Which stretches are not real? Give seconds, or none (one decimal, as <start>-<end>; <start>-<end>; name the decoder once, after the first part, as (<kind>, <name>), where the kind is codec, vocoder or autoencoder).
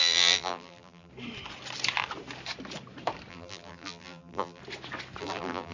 0.0-1.1 (vocoder, BigVGAN v2); 3.3-4.6; 5.2-5.7